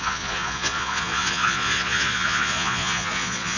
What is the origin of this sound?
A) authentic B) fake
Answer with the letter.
B